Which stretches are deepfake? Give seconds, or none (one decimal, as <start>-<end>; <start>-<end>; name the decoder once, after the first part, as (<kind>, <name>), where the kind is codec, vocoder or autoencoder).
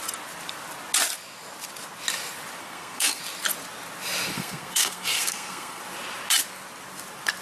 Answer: 2.6-3.2 (codec, SNAC); 4.3-5.8